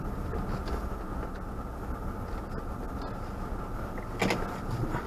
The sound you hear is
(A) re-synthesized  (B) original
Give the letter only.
B